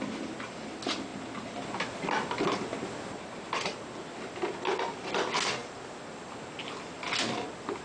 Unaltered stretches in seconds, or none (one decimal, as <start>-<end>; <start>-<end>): 0.0-7.8